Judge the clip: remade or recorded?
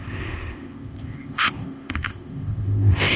remade